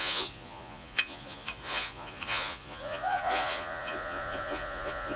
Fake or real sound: fake